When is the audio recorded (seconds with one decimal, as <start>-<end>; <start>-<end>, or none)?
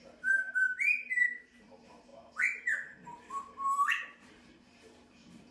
none